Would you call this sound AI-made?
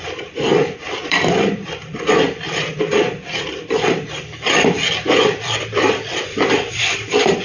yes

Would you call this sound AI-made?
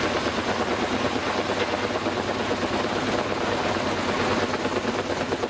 no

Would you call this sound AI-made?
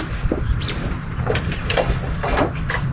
yes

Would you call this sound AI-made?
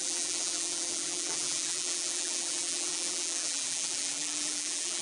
yes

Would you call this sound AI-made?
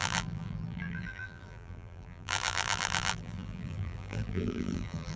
yes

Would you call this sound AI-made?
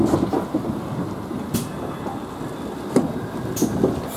no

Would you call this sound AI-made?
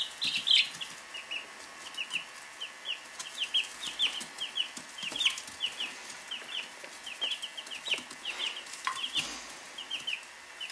no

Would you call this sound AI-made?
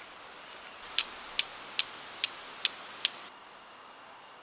no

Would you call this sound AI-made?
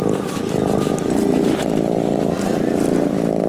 no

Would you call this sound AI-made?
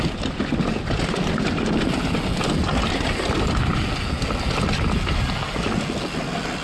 no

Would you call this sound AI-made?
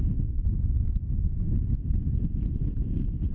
no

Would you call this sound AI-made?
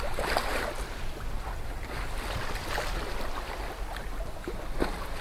no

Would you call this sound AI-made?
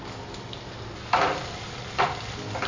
no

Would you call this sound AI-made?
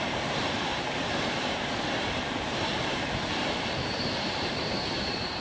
yes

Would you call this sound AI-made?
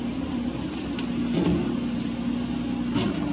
no